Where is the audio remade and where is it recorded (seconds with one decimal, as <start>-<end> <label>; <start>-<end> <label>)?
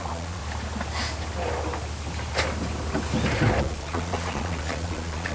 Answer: 0.0-0.4 remade; 0.4-3.6 recorded; 3.6-5.3 remade